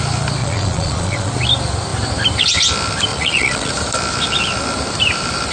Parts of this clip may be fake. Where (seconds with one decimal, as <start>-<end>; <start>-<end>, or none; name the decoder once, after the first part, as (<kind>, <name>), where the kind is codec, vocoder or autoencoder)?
0.4-1.3 (vocoder, Vocos); 3.1-3.7